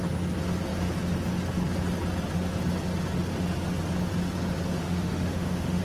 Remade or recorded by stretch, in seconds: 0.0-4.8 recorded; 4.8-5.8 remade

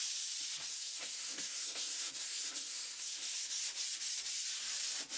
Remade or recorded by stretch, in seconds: 0.0-0.7 recorded; 0.7-3.6 remade; 3.6-5.2 recorded